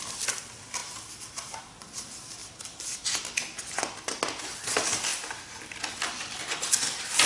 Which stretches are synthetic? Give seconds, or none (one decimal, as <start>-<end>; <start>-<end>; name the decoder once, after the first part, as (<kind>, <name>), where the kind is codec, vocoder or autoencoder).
0.0-2.4 (vocoder, BigVGAN v2); 4.4-7.3